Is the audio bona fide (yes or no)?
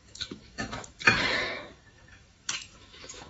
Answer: no